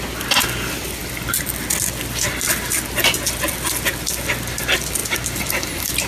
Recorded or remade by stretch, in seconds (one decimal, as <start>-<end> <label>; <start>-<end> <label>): 0.0-5.0 recorded; 5.0-6.1 remade